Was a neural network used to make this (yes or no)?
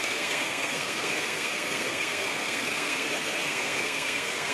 yes